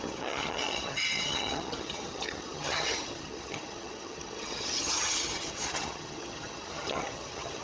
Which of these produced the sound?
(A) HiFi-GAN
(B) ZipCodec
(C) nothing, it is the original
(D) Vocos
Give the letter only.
A